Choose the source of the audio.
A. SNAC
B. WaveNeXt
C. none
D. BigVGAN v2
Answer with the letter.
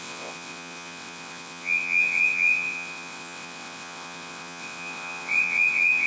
B